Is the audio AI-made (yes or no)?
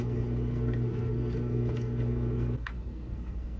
yes